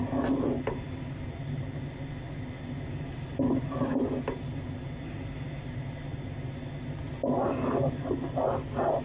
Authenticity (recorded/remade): recorded